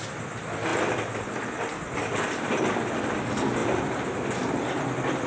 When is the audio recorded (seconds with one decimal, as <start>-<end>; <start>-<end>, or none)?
0.0-5.3